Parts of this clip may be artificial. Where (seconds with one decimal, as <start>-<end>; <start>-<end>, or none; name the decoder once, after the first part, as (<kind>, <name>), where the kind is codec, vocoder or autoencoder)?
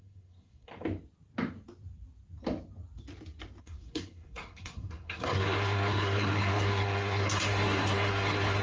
0.0-0.7 (codec, SNAC); 3.6-8.6